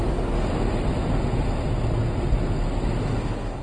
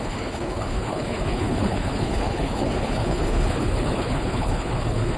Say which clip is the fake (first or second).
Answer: second